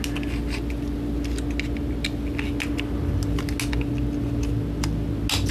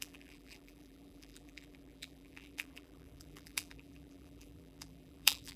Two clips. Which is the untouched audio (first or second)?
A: first